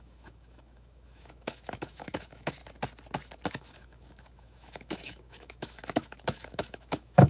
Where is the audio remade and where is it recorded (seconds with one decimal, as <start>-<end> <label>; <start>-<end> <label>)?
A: 0.0-2.6 remade; 2.6-3.5 recorded; 3.5-7.3 remade